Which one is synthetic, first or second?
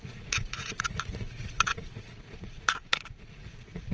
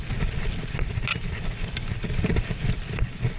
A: first